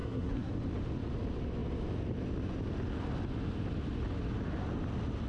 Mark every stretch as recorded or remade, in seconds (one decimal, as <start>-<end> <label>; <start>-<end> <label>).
0.0-0.5 remade; 0.5-5.3 recorded